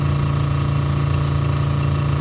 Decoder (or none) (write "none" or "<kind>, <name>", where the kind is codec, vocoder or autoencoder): none